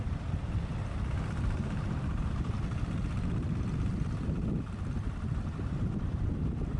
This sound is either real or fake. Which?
fake